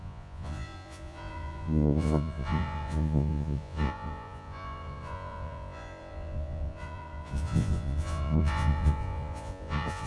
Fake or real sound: fake